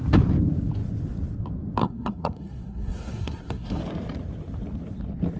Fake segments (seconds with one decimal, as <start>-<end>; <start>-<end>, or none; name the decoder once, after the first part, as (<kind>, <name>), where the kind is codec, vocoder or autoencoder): 1.8-3.8 (codec, SNAC)